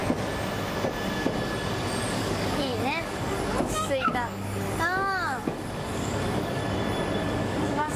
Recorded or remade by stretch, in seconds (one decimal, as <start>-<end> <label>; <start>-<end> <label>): 0.0-2.1 recorded; 2.1-6.6 remade; 6.6-7.2 recorded; 7.2-8.0 remade